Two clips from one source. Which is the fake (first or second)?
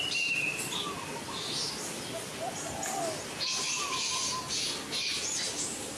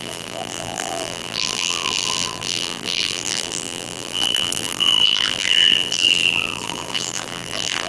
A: second